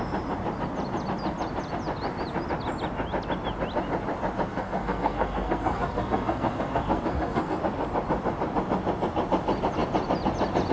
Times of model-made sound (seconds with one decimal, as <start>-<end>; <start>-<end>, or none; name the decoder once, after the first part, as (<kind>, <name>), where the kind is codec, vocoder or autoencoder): 4.5-7.6 (codec, SNAC)